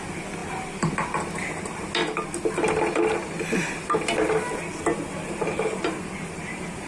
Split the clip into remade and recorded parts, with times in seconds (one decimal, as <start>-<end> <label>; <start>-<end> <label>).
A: 0.0-6.9 recorded